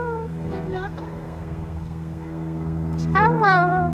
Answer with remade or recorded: remade